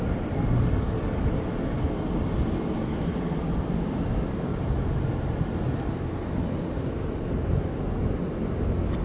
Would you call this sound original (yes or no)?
yes